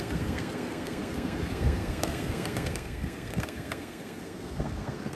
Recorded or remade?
remade